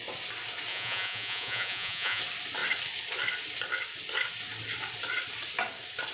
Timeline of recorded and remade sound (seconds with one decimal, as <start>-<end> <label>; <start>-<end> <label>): 0.0-0.7 recorded; 0.7-2.2 remade; 2.2-6.1 recorded